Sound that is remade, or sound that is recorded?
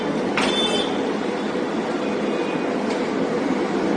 recorded